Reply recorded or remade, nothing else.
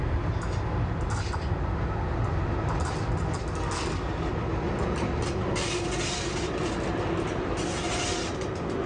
recorded